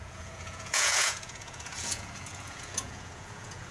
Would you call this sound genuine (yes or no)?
no